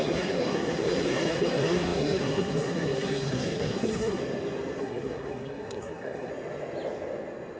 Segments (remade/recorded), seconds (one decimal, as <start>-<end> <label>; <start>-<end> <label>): 0.0-4.2 remade; 4.2-4.8 recorded; 4.8-6.3 remade; 6.3-7.6 recorded